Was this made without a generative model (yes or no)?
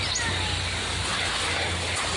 yes